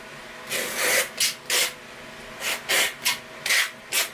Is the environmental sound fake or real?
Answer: real